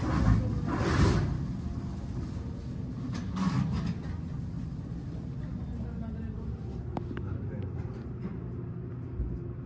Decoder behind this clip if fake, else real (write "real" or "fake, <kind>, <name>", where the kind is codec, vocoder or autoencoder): real